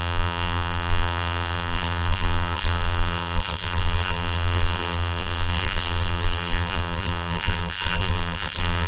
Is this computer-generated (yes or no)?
yes